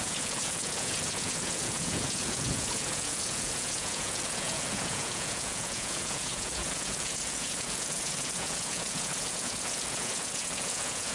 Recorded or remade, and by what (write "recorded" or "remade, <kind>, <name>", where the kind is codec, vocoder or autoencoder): remade, vocoder, Vocos